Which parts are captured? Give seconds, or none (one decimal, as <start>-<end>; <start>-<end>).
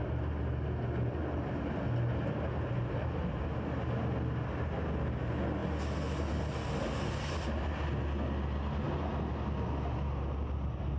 0.0-11.0